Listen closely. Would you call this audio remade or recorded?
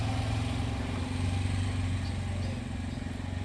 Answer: recorded